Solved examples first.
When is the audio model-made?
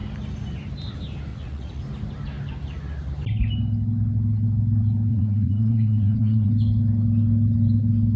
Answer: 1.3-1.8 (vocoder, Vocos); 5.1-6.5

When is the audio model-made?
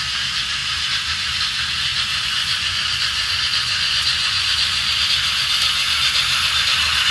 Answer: 1.9-5.1 (vocoder, Vocos)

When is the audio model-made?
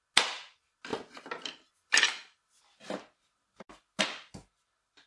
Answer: none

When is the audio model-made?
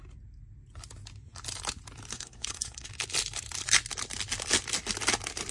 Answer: 2.1-2.9 (codec, SNAC)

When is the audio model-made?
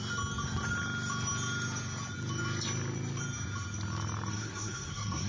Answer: 4.3-5.3 (codec, SNAC)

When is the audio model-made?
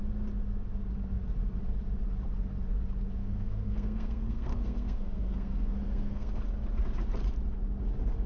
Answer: 3.2-6.4 (codec, SNAC)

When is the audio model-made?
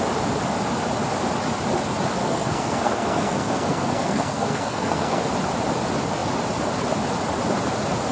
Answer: 2.2-5.2 (codec, SNAC)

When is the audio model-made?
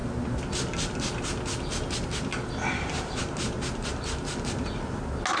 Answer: none